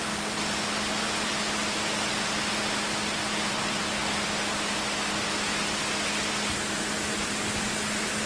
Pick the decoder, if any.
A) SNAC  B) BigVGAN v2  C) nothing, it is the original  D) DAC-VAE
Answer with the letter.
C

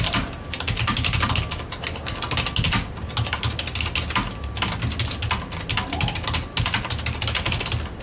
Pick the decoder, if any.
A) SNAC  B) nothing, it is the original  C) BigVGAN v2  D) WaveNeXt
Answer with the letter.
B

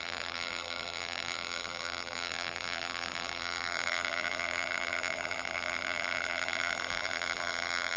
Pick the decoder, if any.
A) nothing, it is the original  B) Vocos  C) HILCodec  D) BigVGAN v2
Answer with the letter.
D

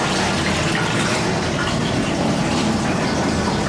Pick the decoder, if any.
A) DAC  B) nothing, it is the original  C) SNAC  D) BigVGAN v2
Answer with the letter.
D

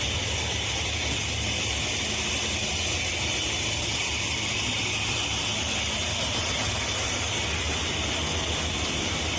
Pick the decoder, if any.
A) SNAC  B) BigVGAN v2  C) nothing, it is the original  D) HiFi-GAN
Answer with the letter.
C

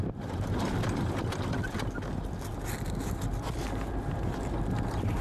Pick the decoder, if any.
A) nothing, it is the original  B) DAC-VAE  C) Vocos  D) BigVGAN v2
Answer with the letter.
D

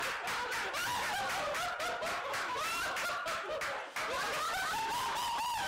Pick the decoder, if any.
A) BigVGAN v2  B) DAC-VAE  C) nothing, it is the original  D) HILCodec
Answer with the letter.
A